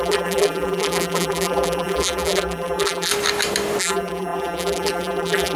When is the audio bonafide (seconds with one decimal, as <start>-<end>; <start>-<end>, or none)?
3.1-3.8